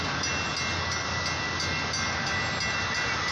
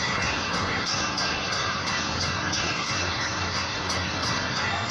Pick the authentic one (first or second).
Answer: first